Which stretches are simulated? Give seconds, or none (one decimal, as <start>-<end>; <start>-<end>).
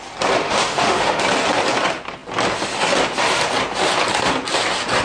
0.4-1.2